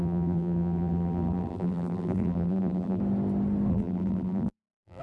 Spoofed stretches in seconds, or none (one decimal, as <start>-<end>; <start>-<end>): 0.0-3.0; 3.7-5.0